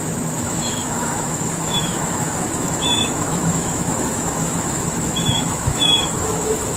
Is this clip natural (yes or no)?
no